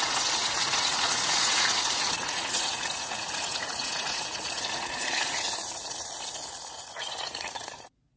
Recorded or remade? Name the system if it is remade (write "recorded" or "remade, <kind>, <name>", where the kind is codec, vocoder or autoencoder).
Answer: remade, vocoder, Vocos